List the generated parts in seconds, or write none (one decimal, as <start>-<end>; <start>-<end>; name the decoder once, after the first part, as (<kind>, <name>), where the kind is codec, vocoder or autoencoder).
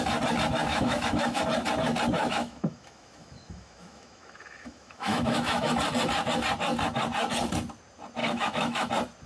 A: 0.7-1.4 (autoencoder, DAC-VAE); 2.2-5.7; 8.2-8.9